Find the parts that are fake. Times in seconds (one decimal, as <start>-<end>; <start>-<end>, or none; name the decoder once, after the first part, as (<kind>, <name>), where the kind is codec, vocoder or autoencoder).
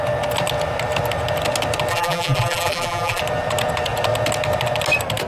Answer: 1.9-3.2 (vocoder, BigVGAN v2)